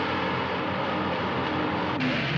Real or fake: real